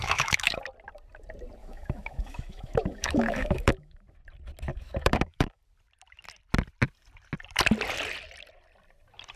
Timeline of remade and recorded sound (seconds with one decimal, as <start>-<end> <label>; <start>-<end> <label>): 0.0-0.6 remade; 0.6-1.6 recorded; 1.6-4.0 remade; 4.0-4.7 recorded; 4.7-5.6 remade; 5.6-9.4 recorded